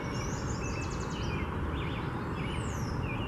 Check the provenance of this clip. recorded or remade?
recorded